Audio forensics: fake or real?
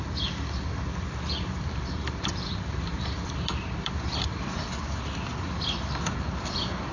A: fake